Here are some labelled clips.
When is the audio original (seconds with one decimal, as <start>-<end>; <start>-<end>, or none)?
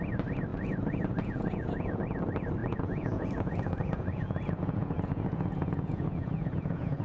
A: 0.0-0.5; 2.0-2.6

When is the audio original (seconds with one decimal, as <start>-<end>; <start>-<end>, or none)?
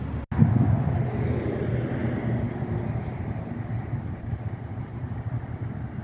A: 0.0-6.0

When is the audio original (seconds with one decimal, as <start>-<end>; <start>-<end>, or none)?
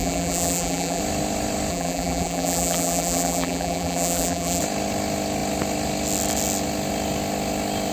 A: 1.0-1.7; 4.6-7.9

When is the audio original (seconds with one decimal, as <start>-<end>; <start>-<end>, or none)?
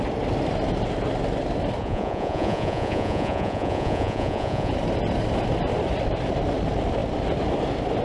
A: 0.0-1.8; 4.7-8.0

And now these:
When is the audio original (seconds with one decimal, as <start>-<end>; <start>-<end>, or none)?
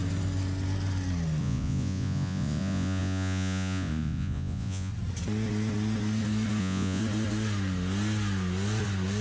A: 0.0-1.4; 4.9-6.6; 7.0-9.2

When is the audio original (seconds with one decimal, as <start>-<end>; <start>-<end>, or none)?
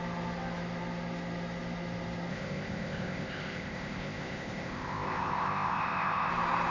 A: 0.0-2.3; 6.3-6.7